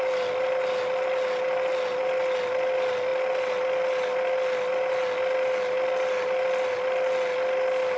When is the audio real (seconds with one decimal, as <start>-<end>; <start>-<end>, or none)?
0.0-8.0